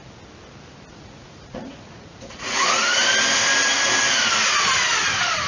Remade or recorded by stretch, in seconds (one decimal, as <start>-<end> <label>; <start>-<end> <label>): 0.0-0.9 recorded; 0.9-3.0 remade; 3.0-5.5 recorded